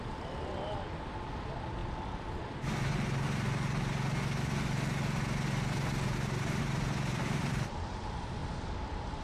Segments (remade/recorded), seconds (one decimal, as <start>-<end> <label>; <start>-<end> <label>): 0.0-1.8 remade; 1.8-6.6 recorded; 6.6-8.4 remade; 8.4-9.2 recorded